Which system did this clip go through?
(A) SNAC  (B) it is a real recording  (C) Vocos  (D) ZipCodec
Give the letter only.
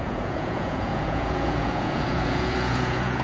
C